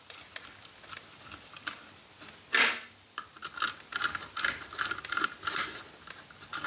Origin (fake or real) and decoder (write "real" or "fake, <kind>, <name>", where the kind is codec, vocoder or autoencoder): real